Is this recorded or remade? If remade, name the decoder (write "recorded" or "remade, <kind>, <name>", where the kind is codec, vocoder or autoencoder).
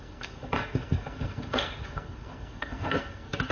remade, codec, SNAC